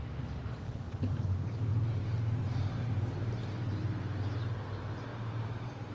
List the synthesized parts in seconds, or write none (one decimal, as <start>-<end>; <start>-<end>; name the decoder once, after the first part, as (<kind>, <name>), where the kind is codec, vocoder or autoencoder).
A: 5.1-5.9 (vocoder, BigVGAN v2)